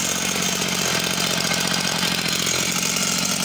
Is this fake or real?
real